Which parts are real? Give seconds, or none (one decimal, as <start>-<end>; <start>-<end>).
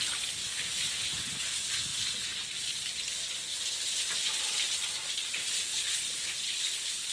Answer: 0.0-5.7